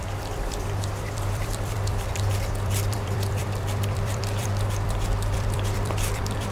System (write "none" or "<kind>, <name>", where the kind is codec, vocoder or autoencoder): vocoder, BigVGAN v2